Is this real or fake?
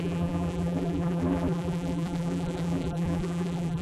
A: fake